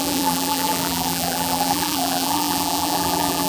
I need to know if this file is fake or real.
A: fake